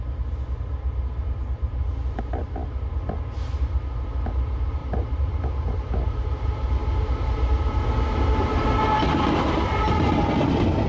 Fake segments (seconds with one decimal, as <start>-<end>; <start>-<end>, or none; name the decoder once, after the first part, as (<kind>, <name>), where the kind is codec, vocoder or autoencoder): 4.8-6.1 (vocoder, BigVGAN v2)